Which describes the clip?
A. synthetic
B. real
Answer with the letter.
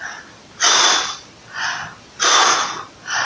B